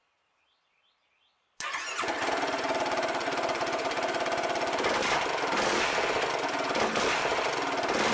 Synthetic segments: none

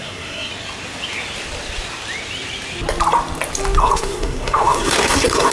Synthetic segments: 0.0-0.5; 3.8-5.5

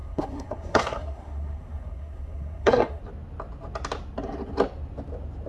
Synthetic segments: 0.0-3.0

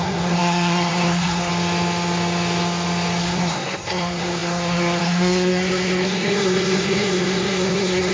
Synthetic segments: 0.0-1.5; 3.2-8.1